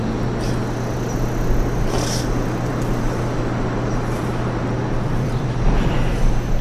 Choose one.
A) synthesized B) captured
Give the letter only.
B